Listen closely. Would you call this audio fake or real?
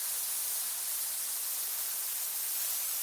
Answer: real